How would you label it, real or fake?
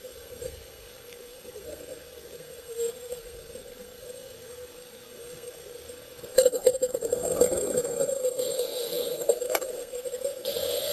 fake